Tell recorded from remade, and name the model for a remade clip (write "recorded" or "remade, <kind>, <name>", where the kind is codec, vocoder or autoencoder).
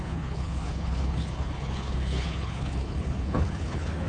remade, codec, HILCodec